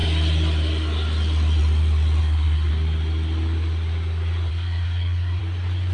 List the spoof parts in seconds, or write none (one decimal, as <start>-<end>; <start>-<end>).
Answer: 2.2-2.7; 4.5-5.4